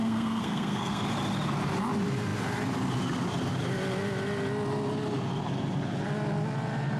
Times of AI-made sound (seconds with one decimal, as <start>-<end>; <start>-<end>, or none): 0.0-1.0